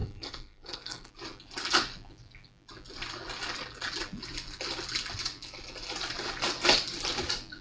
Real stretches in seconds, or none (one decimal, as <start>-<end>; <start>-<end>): 1.1-7.6